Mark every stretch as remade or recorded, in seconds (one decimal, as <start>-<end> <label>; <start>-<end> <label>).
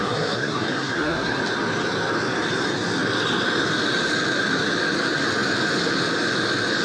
0.0-1.4 remade; 1.4-6.8 recorded